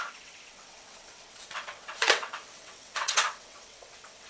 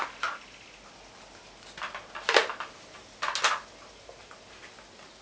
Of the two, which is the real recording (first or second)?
second